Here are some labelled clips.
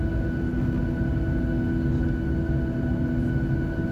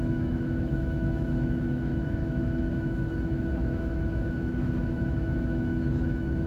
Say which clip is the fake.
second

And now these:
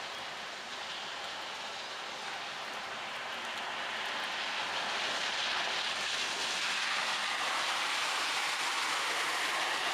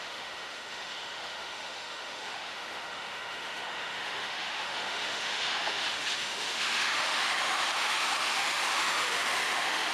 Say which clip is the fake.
second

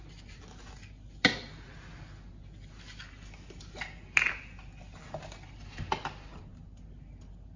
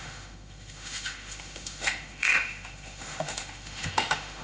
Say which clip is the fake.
second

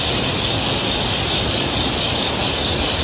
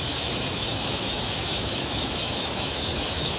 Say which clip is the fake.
second